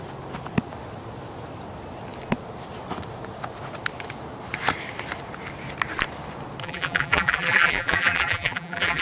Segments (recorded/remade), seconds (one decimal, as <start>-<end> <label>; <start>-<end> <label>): 0.0-6.6 recorded; 6.6-9.0 remade